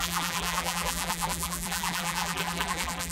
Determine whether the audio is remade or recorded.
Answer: remade